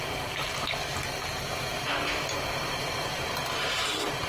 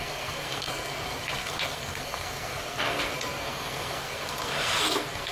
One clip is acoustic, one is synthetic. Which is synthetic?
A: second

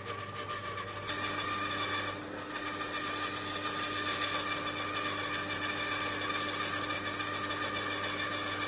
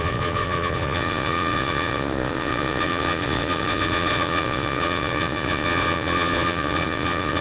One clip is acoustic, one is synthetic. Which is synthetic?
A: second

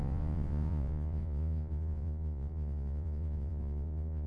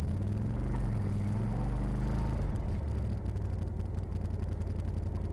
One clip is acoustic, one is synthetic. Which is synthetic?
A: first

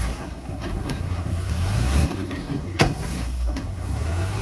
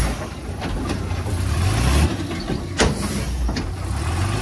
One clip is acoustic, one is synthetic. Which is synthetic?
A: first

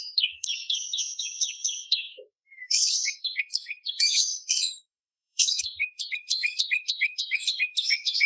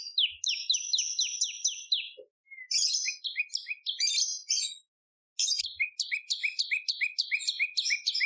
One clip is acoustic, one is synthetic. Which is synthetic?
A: first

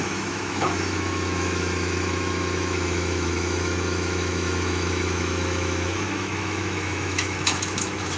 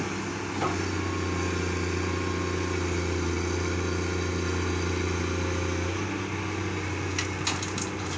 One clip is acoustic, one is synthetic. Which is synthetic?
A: first